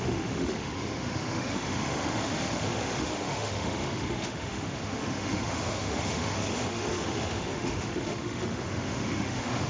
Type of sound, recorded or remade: remade